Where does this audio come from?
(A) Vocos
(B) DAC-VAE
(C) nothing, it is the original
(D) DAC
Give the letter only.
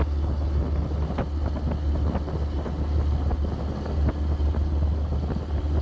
C